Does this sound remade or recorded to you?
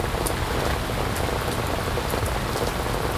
recorded